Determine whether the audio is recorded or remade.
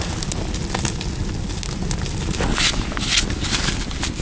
recorded